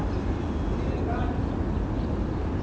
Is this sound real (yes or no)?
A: yes